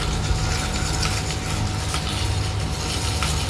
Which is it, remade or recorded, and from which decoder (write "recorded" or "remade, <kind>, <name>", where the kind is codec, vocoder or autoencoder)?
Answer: recorded